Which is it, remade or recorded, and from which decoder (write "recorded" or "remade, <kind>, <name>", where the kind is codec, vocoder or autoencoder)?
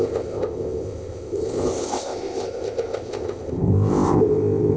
remade, codec, ZipCodec